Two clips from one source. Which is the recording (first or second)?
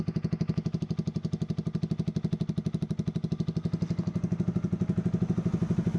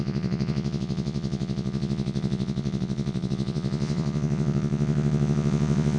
first